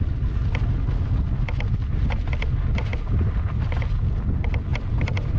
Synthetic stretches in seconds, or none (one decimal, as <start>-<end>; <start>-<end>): none